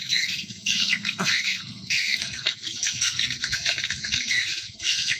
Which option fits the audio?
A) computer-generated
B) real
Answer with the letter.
A